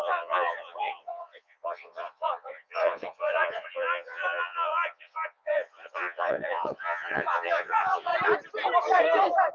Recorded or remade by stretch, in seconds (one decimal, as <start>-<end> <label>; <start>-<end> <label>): 0.0-8.1 remade; 8.1-9.5 recorded